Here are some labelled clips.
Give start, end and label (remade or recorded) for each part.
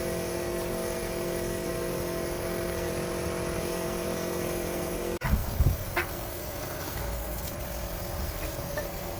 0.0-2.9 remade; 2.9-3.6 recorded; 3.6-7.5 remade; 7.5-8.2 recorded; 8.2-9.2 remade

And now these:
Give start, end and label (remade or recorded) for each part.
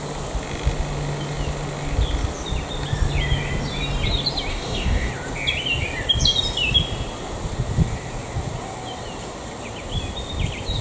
0.0-4.5 recorded; 4.5-5.1 remade; 5.1-10.8 recorded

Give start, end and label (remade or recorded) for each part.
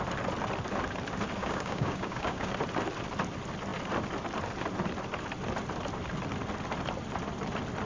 0.0-1.4 recorded; 1.4-2.5 remade; 2.5-7.9 recorded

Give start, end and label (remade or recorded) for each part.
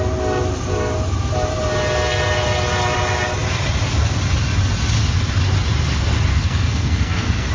0.0-6.3 recorded; 6.3-7.5 remade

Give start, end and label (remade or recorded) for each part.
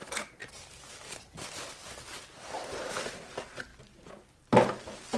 0.0-5.2 recorded